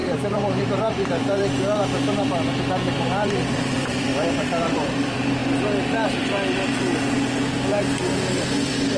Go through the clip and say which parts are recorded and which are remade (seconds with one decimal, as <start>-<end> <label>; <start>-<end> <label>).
0.0-4.1 remade; 4.1-4.7 recorded; 4.7-5.4 remade; 5.4-8.3 recorded; 8.3-9.0 remade